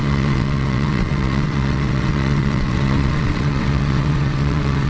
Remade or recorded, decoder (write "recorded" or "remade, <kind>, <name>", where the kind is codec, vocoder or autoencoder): remade, vocoder, WaveNeXt